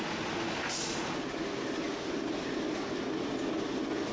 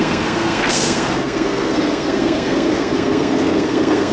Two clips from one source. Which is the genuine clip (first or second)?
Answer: first